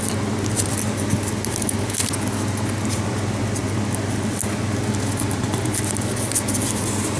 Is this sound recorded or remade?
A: recorded